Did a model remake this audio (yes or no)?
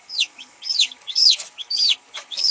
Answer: yes